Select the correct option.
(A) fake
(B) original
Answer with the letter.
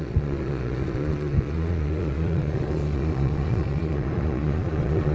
A